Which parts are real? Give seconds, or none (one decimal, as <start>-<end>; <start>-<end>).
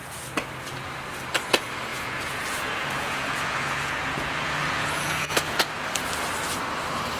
0.0-1.9; 5.7-7.2